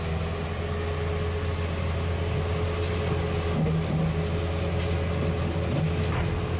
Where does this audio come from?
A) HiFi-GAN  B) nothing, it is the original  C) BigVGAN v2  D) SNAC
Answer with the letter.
B